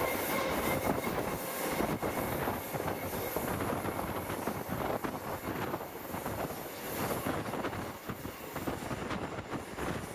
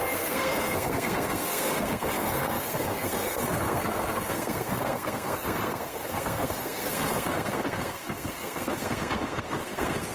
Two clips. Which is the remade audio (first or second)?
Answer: second